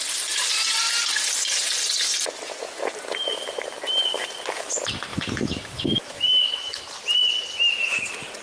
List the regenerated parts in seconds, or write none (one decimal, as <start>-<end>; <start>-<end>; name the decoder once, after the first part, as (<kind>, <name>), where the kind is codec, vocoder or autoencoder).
5.1-6.9 (autoencoder, DAC-VAE)